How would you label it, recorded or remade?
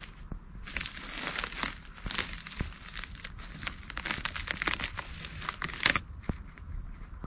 recorded